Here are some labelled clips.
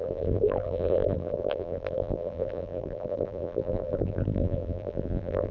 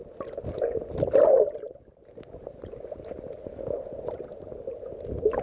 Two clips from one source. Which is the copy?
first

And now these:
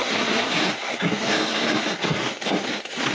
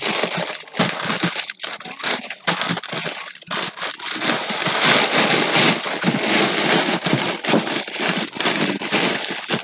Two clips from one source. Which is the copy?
first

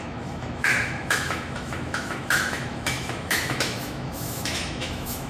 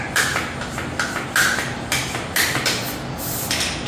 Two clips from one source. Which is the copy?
first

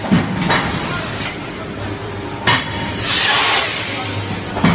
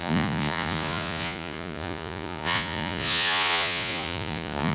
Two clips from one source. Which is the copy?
second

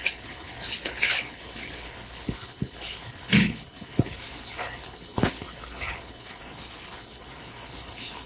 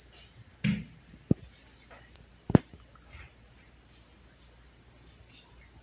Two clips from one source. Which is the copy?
first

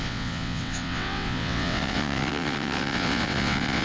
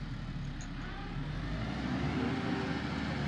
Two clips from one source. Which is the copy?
first